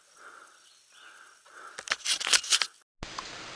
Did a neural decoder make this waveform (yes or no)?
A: no